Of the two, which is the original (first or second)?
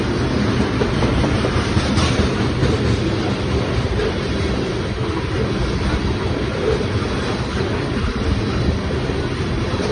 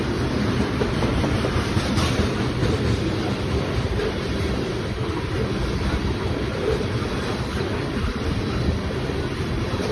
first